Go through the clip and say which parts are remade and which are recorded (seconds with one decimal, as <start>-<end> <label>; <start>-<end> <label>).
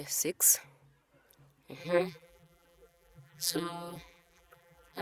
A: 0.0-1.8 recorded; 1.8-5.0 remade